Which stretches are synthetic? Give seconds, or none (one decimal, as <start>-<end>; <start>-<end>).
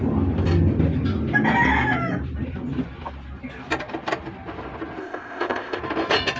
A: 5.0-5.8